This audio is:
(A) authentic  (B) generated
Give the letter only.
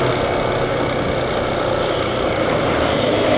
A